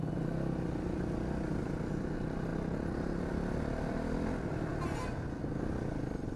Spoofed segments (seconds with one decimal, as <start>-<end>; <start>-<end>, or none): none